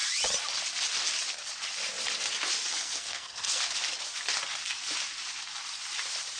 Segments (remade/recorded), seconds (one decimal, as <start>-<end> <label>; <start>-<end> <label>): 0.0-2.7 recorded; 2.7-3.6 remade; 3.6-6.4 recorded